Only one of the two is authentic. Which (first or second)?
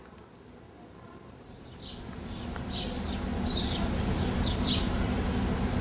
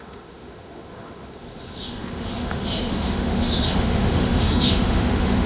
first